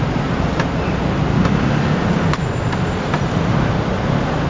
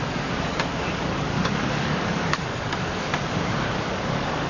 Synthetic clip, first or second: second